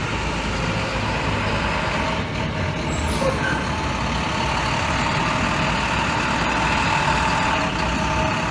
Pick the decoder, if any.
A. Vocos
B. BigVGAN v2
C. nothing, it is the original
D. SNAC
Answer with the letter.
C